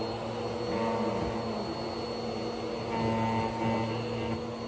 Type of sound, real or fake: real